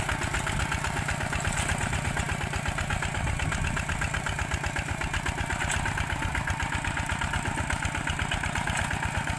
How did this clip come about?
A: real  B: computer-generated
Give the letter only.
A